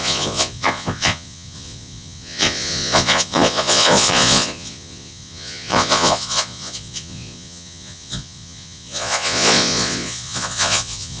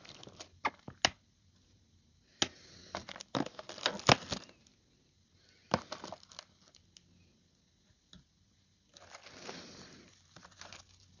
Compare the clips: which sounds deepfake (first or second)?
first